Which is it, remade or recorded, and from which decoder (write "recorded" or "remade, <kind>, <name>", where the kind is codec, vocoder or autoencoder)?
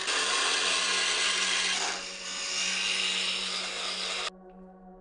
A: recorded